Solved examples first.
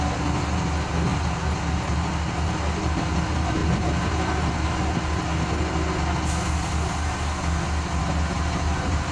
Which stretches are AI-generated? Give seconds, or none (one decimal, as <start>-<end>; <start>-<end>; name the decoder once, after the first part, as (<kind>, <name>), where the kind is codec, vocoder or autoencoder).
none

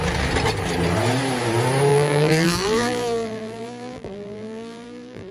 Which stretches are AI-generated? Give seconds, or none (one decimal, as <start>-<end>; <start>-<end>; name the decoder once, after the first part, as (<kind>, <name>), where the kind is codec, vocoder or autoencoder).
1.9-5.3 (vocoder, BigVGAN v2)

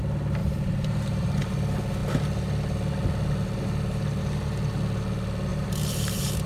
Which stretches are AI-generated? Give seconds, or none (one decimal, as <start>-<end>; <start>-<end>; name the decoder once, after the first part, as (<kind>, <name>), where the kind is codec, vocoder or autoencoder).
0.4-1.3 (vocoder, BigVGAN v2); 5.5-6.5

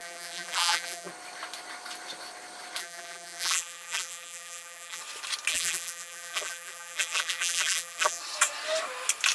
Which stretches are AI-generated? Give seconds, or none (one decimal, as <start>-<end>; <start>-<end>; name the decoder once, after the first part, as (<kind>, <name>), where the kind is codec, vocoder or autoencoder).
0.0-1.1 (vocoder, BigVGAN v2); 2.8-5.0; 5.5-8.2